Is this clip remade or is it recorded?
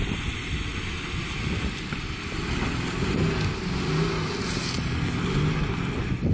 recorded